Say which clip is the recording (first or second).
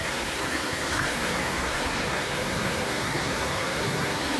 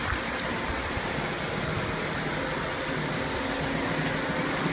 second